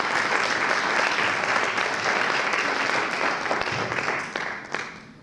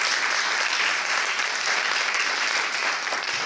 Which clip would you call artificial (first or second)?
second